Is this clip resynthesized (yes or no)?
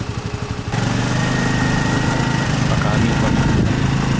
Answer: no